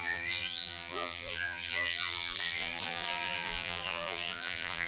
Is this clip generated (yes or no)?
yes